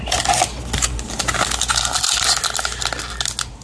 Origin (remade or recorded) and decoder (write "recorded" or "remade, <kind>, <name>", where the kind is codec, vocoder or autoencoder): recorded